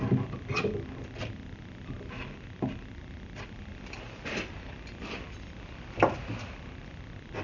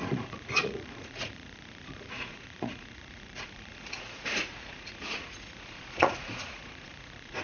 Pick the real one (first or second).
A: first